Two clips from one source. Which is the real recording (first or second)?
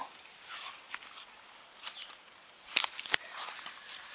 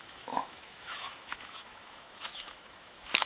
first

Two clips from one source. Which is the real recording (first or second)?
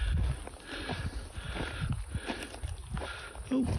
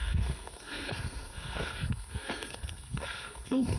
first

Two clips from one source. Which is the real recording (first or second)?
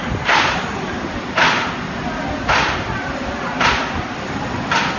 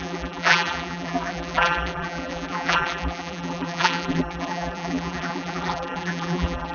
first